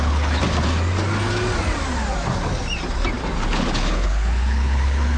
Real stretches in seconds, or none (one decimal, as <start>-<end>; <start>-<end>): 0.4-3.5